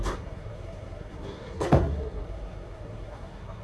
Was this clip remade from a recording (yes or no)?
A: yes